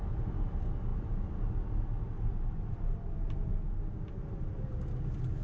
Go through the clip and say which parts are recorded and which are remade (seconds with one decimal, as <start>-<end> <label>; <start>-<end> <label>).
0.0-5.4 recorded

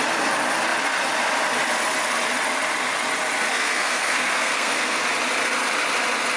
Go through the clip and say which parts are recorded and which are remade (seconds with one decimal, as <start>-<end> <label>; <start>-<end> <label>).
0.0-3.5 recorded; 3.5-5.0 remade; 5.0-6.4 recorded

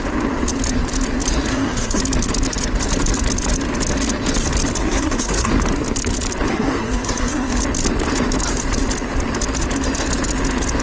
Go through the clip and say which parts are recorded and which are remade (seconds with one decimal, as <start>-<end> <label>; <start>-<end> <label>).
0.0-1.5 recorded; 1.5-2.0 remade; 2.0-4.8 recorded; 4.8-5.5 remade; 5.5-6.5 recorded; 6.5-7.6 remade; 7.6-10.8 recorded

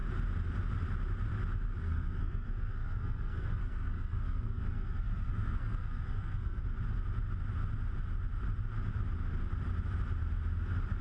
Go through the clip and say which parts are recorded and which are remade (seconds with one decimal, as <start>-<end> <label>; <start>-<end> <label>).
0.0-1.8 recorded; 1.8-6.6 remade; 6.6-11.0 recorded

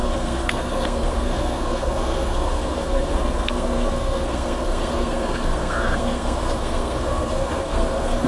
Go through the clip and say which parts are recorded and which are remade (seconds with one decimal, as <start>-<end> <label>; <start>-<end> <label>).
0.0-8.3 remade

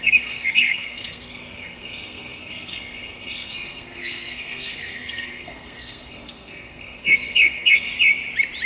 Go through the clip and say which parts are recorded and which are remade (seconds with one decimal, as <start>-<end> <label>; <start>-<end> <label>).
0.0-7.9 remade; 7.9-8.7 recorded